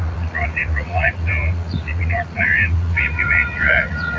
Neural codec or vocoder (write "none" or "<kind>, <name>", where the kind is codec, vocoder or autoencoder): vocoder, Vocos